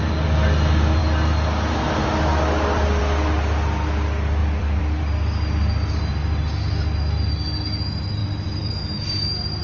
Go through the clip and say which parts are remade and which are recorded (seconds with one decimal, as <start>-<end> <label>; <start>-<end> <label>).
0.0-4.4 recorded; 4.4-5.0 remade; 5.0-8.2 recorded; 8.2-8.7 remade; 8.7-9.6 recorded